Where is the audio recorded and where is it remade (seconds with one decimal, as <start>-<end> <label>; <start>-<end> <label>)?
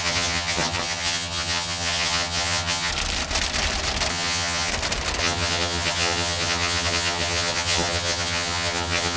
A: 0.0-2.9 remade; 2.9-4.1 recorded; 4.1-4.7 remade; 4.7-5.2 recorded; 5.2-9.2 remade